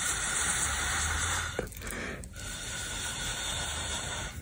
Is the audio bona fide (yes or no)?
no